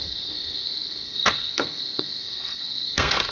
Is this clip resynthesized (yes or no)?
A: yes